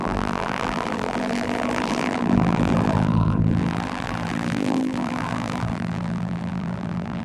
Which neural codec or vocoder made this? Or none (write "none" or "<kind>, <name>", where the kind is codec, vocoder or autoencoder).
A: vocoder, BigVGAN v2